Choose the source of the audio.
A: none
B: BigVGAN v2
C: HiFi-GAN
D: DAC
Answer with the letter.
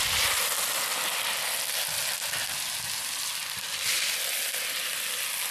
A